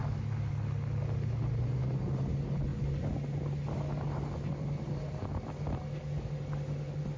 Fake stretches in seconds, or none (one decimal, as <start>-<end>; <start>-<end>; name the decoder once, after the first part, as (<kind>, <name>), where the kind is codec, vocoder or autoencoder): none